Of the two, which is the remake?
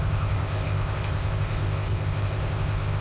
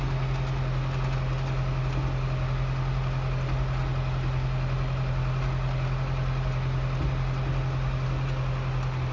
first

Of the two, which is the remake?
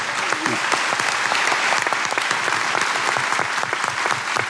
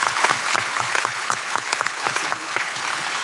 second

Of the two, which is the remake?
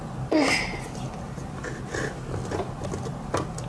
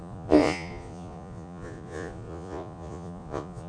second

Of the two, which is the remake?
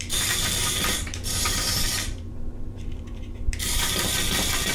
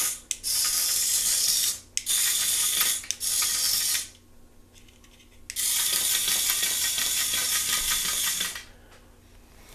first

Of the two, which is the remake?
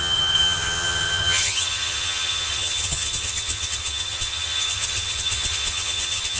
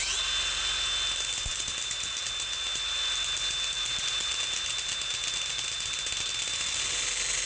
first